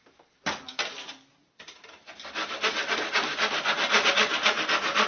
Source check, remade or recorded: recorded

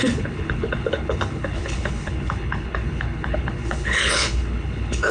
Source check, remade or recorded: remade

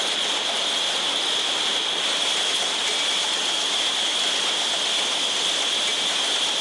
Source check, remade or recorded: recorded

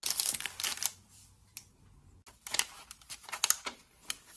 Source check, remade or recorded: recorded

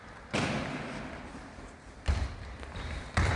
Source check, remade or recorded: recorded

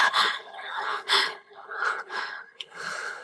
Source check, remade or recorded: remade